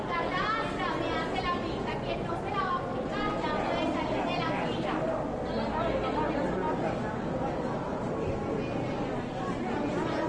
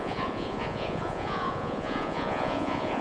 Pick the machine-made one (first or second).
second